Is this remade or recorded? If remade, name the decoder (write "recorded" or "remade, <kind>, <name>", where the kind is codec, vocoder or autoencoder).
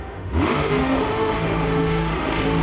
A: remade, autoencoder, DAC-VAE